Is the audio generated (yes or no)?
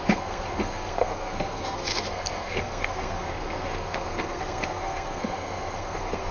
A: yes